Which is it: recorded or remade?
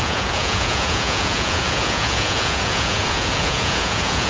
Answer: remade